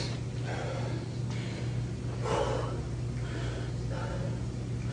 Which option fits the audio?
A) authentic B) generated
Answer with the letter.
A